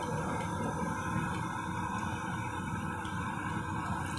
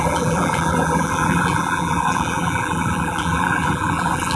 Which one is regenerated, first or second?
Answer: second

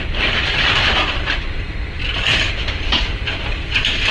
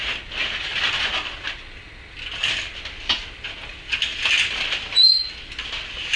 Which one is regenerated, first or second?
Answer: first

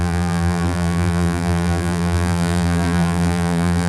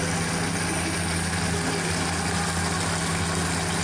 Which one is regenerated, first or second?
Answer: first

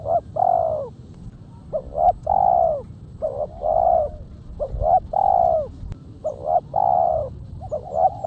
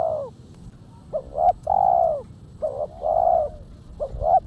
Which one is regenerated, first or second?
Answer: first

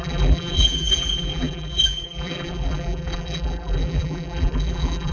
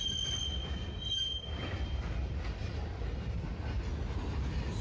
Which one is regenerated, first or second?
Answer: first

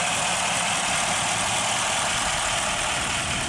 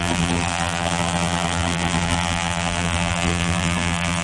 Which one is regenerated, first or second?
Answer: second